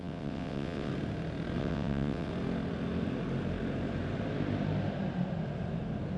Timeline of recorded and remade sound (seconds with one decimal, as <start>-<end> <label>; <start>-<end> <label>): 0.0-0.9 remade; 0.9-1.6 recorded; 1.6-2.3 remade; 2.3-6.2 recorded

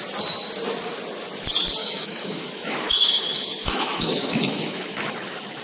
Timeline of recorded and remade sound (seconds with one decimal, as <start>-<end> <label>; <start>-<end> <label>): 0.0-1.8 recorded; 1.8-5.6 remade

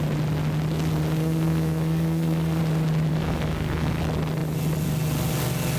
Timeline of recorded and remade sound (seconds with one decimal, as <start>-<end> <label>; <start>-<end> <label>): 0.0-1.2 recorded; 1.2-2.6 remade; 2.6-3.1 recorded; 3.1-4.0 remade; 4.0-5.8 recorded

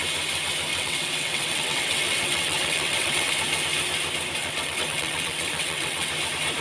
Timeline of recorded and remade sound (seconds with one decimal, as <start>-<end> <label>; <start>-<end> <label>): 0.0-0.7 recorded; 0.7-3.3 remade; 3.3-4.4 recorded; 4.4-6.1 remade; 6.1-6.6 recorded